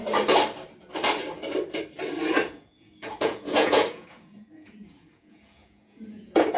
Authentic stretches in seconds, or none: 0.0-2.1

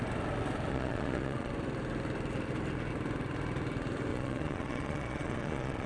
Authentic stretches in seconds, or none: 0.0-0.7; 1.5-4.1